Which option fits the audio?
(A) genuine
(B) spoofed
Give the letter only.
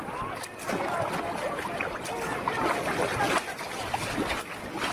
A